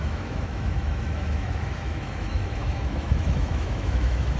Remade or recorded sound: remade